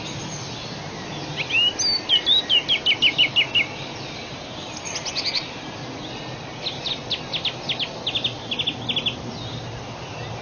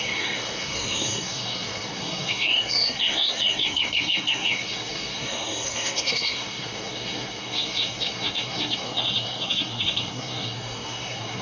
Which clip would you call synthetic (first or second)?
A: second